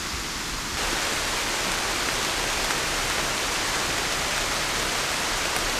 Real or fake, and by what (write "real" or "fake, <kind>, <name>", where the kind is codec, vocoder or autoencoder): real